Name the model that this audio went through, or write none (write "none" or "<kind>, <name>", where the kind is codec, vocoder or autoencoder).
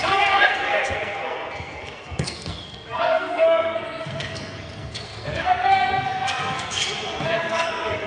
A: codec, SNAC